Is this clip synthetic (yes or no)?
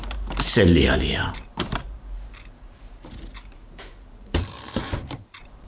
yes